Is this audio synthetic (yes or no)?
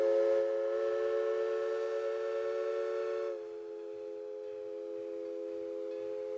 no